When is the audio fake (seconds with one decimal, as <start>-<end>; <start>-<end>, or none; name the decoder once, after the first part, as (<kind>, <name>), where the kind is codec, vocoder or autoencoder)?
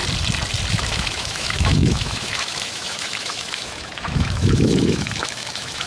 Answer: 0.7-5.9 (autoencoder, DAC-VAE)